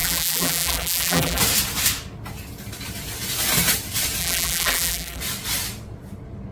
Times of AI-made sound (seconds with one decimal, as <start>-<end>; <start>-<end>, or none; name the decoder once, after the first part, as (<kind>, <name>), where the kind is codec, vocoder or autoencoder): 0.0-1.4 (vocoder, BigVGAN v2); 4.2-5.2